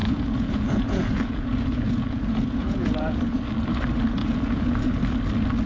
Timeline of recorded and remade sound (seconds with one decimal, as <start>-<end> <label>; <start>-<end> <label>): 0.0-3.4 remade; 3.4-4.2 recorded; 4.2-4.9 remade; 4.9-5.7 recorded